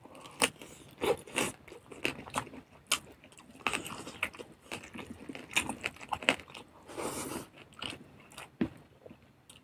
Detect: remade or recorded recorded